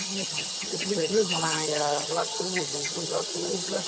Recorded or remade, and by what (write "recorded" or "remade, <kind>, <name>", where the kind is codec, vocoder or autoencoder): remade, vocoder, HiFi-GAN